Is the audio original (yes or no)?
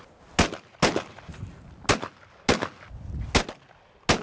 yes